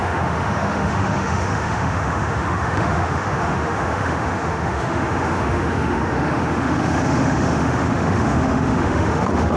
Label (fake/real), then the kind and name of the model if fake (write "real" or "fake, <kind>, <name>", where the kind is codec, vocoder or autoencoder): fake, autoencoder, DAC-VAE